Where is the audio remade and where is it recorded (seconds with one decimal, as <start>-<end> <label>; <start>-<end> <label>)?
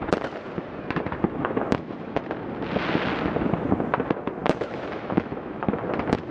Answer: 0.0-1.4 recorded; 1.4-2.2 remade; 2.2-4.4 recorded; 4.4-5.8 remade; 5.8-6.3 recorded